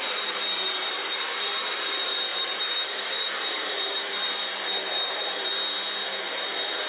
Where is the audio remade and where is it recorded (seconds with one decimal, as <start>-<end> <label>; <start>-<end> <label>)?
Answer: 0.0-5.5 remade; 5.5-6.2 recorded; 6.2-6.9 remade